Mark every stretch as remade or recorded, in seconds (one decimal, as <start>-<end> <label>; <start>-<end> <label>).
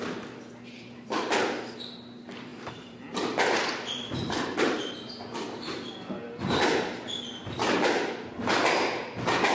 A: 0.0-2.5 recorded; 2.5-4.9 remade; 4.9-9.5 recorded